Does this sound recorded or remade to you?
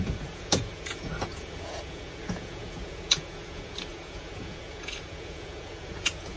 remade